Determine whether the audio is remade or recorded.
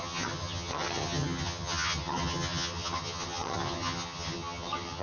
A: remade